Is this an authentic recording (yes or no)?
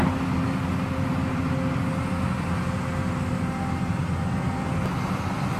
yes